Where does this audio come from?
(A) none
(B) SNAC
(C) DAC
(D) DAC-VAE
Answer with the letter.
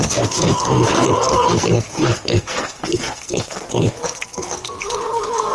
B